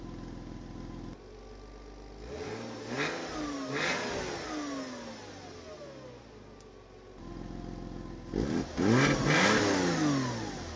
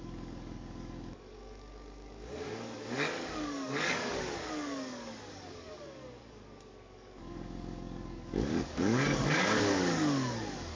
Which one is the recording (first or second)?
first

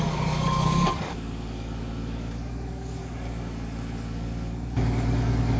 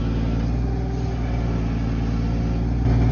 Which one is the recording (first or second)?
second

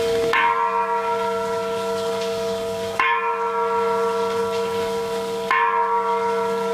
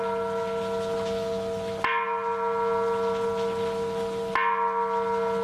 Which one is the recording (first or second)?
second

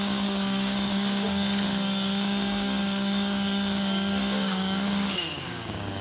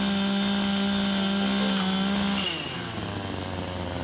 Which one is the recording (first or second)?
second